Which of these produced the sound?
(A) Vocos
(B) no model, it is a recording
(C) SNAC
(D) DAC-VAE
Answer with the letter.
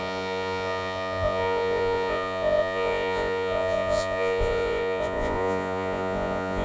A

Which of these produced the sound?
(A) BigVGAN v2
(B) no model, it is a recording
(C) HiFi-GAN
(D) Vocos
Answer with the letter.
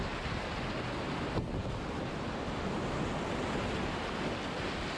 B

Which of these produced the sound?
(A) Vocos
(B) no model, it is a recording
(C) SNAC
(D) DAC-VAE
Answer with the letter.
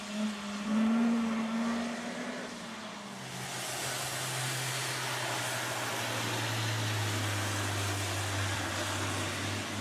B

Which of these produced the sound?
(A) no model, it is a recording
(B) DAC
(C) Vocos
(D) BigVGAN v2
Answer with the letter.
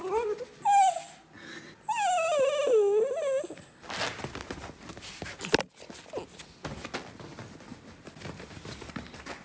A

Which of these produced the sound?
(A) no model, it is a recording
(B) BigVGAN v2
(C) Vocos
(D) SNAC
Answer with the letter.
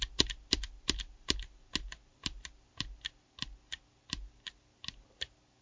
A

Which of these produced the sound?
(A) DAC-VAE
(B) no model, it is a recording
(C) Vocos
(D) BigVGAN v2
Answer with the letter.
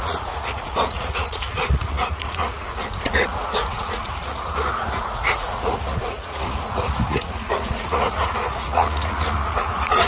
C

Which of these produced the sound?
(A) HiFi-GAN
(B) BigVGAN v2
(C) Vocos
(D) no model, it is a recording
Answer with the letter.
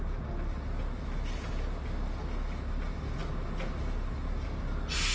D